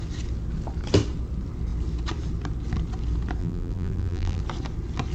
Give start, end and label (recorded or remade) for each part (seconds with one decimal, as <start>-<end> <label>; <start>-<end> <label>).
0.0-3.4 recorded; 3.4-4.4 remade; 4.4-5.1 recorded